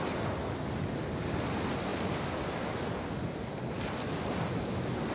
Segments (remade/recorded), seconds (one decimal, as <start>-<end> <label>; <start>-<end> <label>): 0.0-5.1 recorded